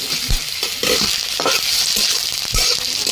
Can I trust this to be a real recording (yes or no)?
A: yes